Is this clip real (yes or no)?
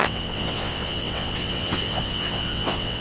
no